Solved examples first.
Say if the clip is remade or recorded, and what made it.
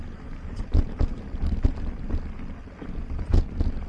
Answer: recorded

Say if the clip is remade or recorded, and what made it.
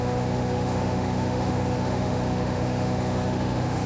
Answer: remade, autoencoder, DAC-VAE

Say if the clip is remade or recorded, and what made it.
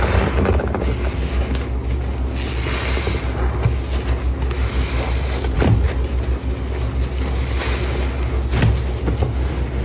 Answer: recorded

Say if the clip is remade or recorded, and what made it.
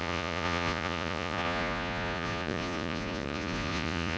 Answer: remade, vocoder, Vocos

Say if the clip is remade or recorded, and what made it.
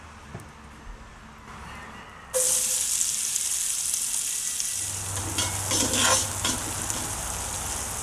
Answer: recorded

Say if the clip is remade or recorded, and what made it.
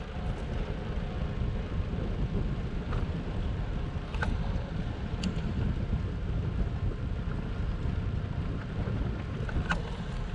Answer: recorded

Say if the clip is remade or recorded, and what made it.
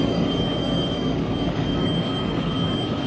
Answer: remade, codec, DAC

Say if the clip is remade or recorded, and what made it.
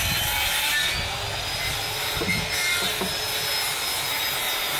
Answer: recorded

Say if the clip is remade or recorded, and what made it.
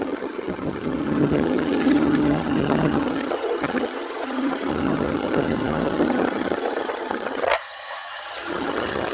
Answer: remade, vocoder, HiFi-GAN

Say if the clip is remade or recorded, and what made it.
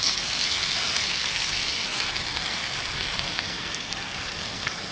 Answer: remade, codec, SNAC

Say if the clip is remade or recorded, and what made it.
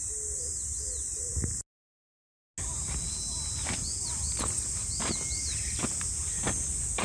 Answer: recorded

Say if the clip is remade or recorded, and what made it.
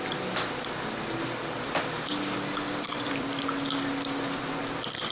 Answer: remade, vocoder, BigVGAN v2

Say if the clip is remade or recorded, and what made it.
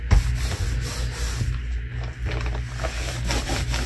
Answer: recorded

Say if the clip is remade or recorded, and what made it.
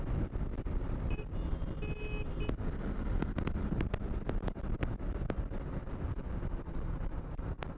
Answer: recorded